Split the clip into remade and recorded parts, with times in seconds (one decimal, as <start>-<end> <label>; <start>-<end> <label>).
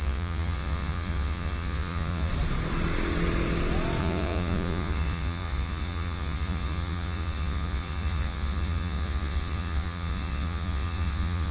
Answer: 0.0-2.3 remade; 2.3-4.0 recorded; 4.0-11.5 remade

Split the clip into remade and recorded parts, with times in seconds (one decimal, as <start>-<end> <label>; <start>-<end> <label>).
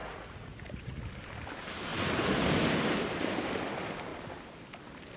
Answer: 0.0-1.0 remade; 1.0-5.2 recorded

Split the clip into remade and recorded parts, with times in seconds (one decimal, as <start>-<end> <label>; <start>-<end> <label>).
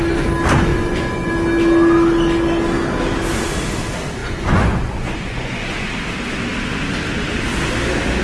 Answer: 0.0-0.7 recorded; 0.7-1.3 remade; 1.3-4.2 recorded; 4.2-5.9 remade; 5.9-8.2 recorded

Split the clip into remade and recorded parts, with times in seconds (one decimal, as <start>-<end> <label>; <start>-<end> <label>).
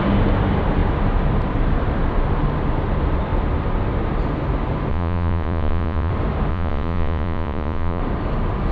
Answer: 0.0-4.9 recorded; 4.9-6.1 remade; 6.1-6.5 recorded; 6.5-8.0 remade; 8.0-8.7 recorded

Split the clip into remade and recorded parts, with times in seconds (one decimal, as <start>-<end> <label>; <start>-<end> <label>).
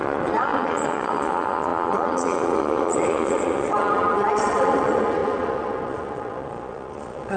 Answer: 0.0-7.4 remade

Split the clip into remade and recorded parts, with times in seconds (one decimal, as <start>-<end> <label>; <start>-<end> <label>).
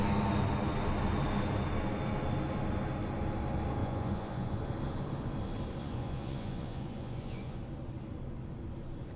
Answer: 0.0-3.8 recorded; 3.8-4.6 remade; 4.6-5.8 recorded; 5.8-7.6 remade; 7.6-9.2 recorded